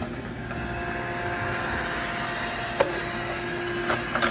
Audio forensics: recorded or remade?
recorded